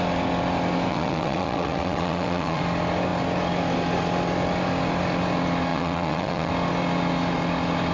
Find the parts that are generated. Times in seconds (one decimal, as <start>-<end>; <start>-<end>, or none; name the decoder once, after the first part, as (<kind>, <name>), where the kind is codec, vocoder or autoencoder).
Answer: 0.9-2.6 (vocoder, WaveNeXt); 5.7-6.5